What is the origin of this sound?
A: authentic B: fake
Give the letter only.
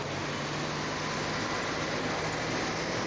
A